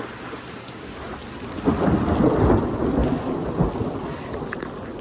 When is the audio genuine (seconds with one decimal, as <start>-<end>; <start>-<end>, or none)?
0.0-5.0